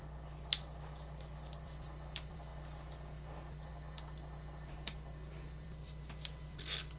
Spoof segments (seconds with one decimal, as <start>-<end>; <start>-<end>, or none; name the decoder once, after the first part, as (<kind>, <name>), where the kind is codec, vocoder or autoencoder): 0.0-2.5 (vocoder, BigVGAN v2); 3.7-7.0